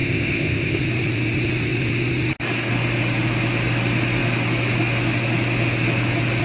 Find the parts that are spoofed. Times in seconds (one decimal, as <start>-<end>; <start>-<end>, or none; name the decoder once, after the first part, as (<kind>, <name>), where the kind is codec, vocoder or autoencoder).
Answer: 0.0-0.8 (codec, ZipCodec)